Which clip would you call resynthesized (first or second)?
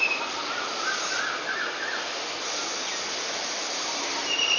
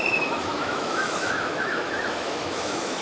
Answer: second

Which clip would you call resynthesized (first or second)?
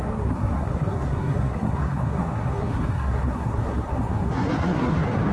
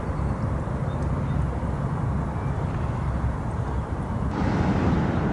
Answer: first